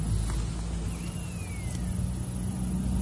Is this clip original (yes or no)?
yes